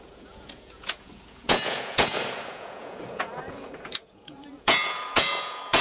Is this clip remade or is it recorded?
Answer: remade